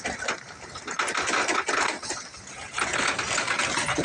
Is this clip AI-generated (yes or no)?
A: no